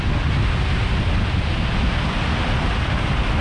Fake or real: real